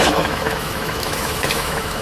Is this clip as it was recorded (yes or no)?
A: no